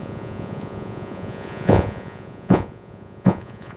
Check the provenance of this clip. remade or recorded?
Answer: remade